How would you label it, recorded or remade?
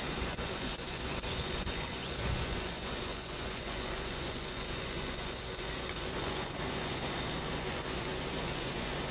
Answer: remade